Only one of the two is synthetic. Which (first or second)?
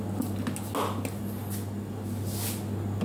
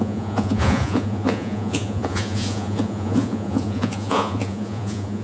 second